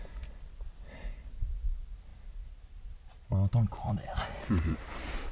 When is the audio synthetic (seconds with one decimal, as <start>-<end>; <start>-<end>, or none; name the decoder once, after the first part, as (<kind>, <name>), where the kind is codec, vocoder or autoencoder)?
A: 2.1-5.3 (vocoder, BigVGAN v2)